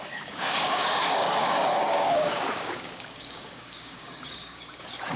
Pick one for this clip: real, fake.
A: fake